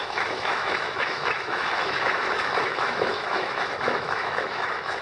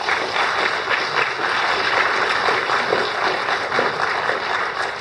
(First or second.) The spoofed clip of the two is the first